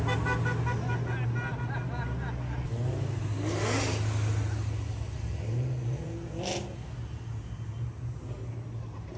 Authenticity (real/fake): real